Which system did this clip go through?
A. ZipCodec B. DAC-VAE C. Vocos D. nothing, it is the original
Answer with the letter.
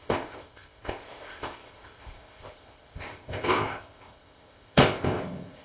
A